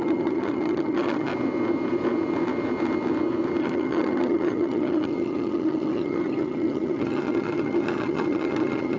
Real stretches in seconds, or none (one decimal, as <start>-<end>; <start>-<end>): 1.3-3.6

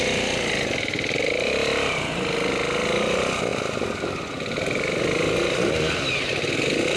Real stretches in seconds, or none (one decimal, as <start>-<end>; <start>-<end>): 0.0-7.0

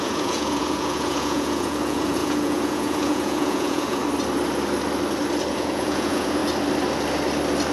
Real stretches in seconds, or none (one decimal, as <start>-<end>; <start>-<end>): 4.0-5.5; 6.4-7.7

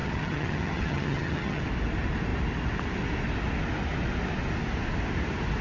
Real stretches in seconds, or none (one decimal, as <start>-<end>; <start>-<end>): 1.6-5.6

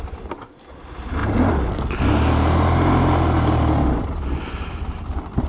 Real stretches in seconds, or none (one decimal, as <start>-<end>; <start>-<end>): 0.0-5.5

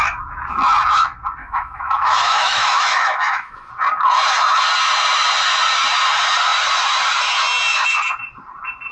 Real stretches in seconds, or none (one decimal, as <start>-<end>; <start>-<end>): 0.0-1.4; 3.7-8.9

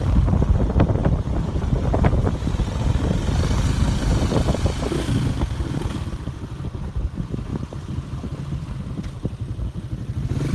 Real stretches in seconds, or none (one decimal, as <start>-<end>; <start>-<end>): 0.0-1.0; 1.5-4.1; 6.8-10.5